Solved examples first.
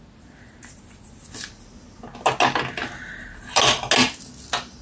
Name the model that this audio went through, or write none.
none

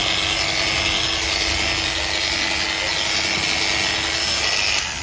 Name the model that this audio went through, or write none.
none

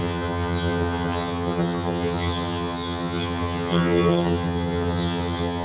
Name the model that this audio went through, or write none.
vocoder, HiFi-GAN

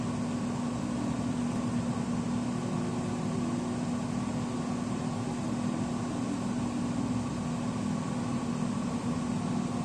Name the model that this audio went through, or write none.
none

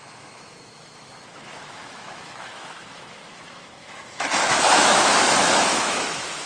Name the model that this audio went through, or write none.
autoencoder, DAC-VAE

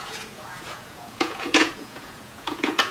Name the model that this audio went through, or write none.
vocoder, Vocos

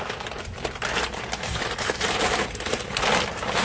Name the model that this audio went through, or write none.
vocoder, BigVGAN v2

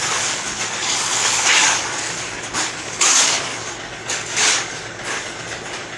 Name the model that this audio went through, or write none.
codec, DAC